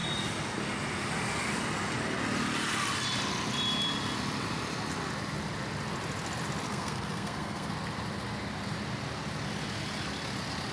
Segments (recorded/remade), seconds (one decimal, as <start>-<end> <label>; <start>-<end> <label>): 0.0-6.7 recorded; 6.7-7.7 remade; 7.7-10.7 recorded